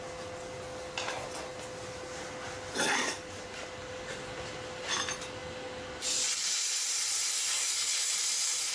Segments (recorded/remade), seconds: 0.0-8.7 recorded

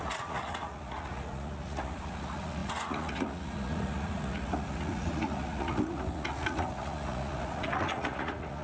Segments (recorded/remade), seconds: 0.0-8.6 remade

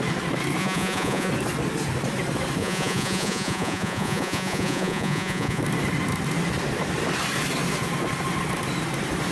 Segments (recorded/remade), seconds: 0.0-0.6 recorded; 0.6-1.3 remade; 1.3-2.6 recorded; 2.6-5.6 remade; 5.6-9.3 recorded

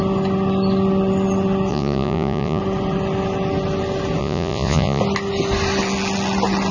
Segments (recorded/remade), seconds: 0.0-1.7 recorded; 1.7-2.6 remade; 2.6-4.2 recorded; 4.2-5.0 remade; 5.0-6.7 recorded

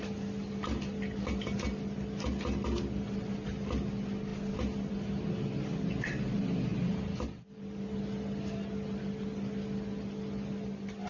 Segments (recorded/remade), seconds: 0.0-11.1 recorded

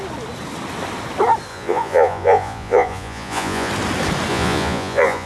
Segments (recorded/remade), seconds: 0.0-1.5 recorded; 1.5-3.7 remade; 3.7-4.3 recorded; 4.3-5.3 remade